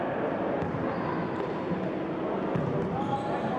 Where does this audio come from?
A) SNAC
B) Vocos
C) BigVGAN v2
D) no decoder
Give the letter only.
D